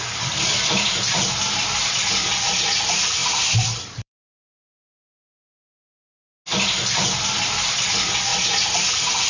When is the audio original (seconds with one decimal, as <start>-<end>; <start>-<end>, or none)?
1.0-3.2; 5.6-9.3

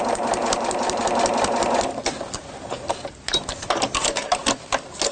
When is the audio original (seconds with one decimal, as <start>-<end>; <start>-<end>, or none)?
0.0-0.4; 1.0-5.1

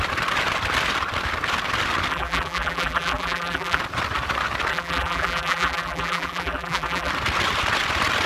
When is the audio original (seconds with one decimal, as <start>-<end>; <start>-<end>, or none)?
0.0-2.1; 3.8-4.7; 7.1-8.3

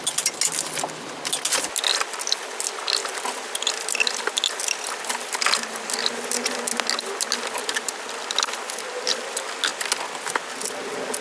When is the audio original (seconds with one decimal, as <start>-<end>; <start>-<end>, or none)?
0.0-11.2

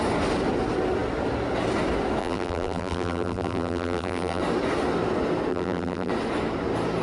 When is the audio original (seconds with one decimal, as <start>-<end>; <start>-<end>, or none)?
0.0-2.2; 4.4-5.5; 6.1-7.0

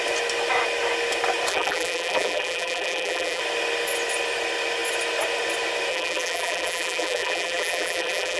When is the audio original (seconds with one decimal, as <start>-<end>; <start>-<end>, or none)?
0.0-1.5; 3.4-5.9